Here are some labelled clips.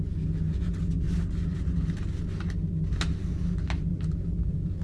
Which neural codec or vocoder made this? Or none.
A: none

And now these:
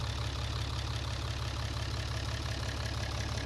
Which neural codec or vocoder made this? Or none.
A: none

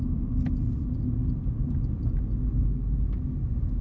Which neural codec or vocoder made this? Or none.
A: none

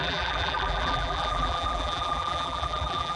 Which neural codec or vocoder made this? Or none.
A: vocoder, BigVGAN v2